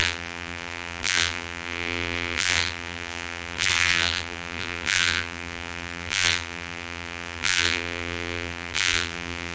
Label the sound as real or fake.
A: fake